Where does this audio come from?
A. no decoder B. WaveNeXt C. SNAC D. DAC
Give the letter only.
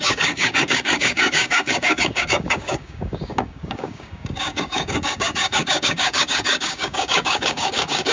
D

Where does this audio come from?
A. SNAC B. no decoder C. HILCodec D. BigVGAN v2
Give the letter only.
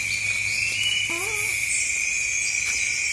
B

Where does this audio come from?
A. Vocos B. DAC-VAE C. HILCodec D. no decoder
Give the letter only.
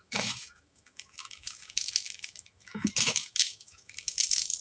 B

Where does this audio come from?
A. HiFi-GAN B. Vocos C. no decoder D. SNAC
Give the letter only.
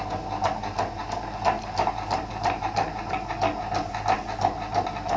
C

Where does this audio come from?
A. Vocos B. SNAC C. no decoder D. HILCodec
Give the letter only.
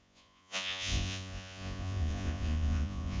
A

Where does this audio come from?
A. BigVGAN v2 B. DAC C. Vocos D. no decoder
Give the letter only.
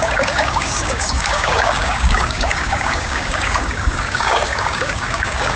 B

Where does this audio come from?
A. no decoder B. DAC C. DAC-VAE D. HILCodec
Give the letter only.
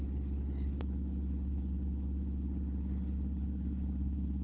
D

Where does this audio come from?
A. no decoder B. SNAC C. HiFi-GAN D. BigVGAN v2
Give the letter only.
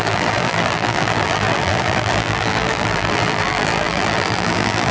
D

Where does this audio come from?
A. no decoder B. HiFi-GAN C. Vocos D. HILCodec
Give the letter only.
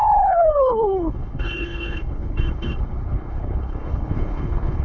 D